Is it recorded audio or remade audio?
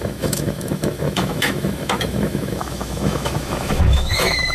remade